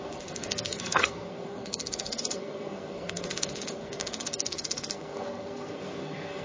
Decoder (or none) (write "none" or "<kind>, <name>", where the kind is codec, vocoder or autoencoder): codec, SNAC